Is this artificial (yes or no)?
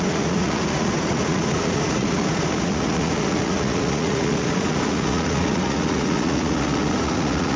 yes